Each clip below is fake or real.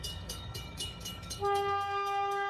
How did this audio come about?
fake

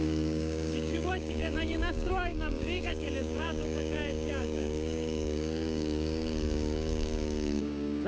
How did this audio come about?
fake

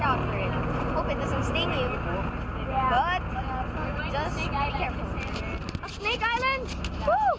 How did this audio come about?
real